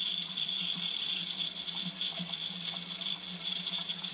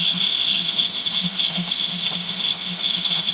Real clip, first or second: first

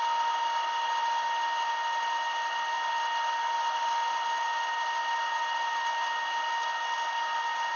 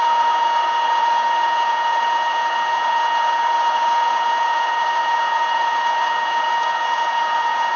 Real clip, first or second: first